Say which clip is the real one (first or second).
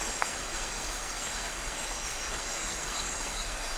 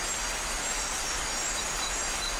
second